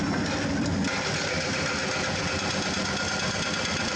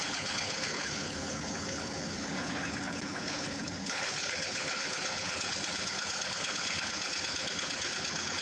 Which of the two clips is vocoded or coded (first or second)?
second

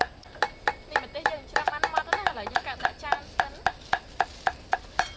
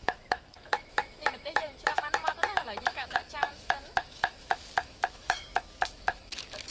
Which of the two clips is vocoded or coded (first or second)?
second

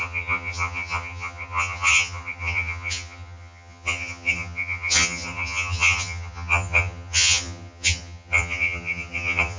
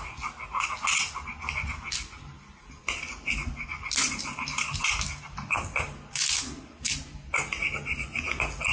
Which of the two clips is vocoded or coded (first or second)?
first